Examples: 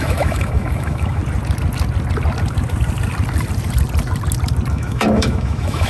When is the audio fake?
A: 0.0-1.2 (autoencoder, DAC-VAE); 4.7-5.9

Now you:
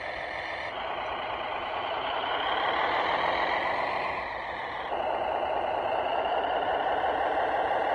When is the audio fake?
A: 1.5-2.3 (autoencoder, DAC-VAE)